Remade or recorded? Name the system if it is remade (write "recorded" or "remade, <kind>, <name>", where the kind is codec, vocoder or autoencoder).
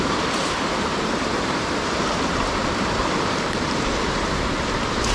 remade, vocoder, BigVGAN v2